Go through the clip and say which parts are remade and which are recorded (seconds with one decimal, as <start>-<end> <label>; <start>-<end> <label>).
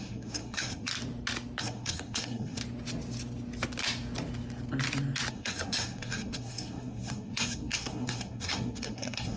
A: 0.0-0.9 remade; 0.9-1.6 recorded; 1.6-2.6 remade; 2.6-5.3 recorded; 5.3-9.4 remade